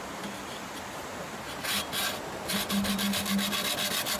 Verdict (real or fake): real